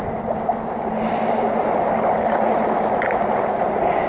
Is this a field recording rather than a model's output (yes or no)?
yes